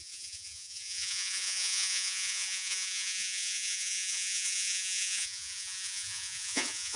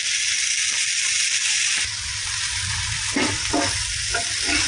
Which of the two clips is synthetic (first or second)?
first